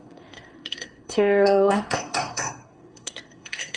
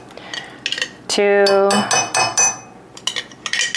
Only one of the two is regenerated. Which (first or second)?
first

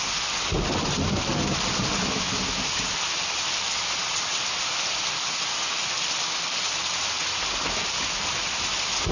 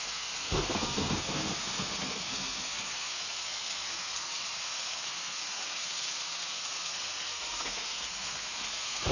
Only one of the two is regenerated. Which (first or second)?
second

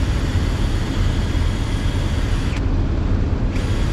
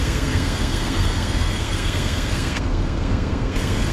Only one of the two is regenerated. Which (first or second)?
second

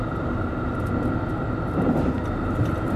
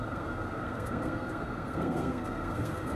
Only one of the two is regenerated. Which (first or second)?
second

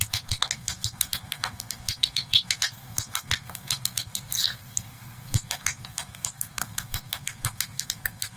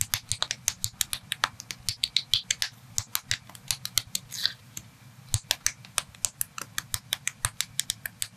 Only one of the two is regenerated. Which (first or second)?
first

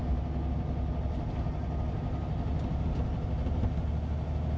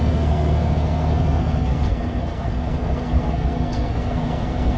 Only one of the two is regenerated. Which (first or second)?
second